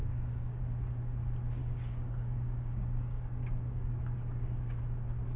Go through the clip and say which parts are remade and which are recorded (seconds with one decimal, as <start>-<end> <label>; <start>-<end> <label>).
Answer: 0.0-0.6 remade; 0.6-1.6 recorded; 1.6-4.8 remade; 4.8-5.4 recorded